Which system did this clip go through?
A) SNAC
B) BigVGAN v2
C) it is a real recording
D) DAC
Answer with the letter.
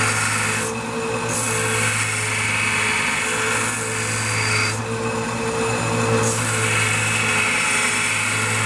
C